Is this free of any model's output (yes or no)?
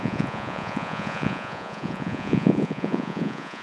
no